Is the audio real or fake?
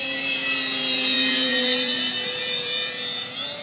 fake